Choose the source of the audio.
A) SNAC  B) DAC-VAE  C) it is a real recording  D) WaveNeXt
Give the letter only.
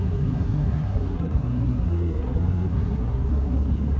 A